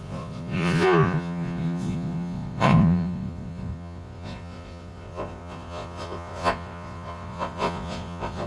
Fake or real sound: fake